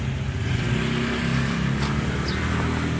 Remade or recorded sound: recorded